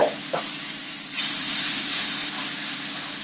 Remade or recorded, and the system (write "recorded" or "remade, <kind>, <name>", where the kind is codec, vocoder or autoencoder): recorded